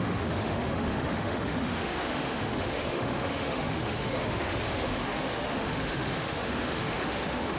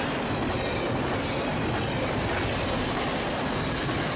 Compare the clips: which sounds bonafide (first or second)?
second